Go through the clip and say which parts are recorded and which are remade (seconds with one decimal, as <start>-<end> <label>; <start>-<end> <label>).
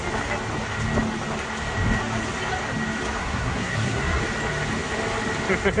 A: 0.0-3.2 recorded; 3.2-4.2 remade; 4.2-5.8 recorded